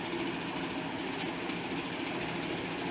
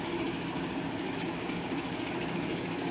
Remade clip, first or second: second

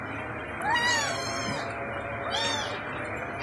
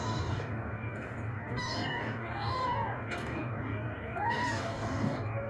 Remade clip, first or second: second